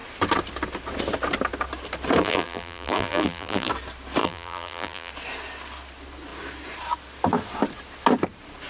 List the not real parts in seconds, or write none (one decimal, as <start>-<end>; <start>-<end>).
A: 2.2-3.7; 4.2-5.1